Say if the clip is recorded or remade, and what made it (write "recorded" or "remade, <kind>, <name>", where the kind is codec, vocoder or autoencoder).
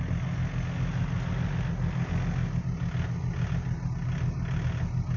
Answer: recorded